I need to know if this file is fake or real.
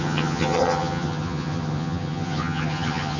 fake